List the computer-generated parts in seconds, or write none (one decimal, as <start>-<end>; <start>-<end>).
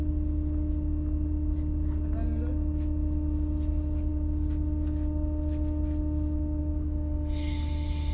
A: none